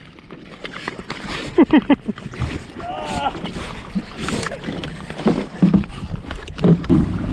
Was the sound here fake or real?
real